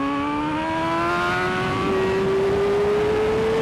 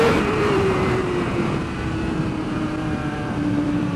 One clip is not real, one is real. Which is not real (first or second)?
second